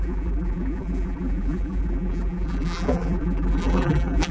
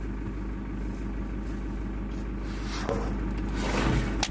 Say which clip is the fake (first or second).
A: first